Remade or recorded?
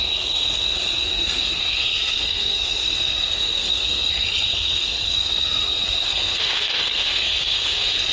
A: remade